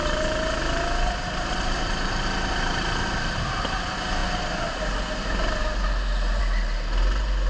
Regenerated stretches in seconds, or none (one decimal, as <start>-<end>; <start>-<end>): none